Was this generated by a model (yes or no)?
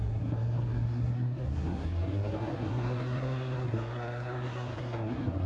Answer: yes